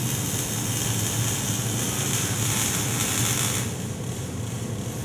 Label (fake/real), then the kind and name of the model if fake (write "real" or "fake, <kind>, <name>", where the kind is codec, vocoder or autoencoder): real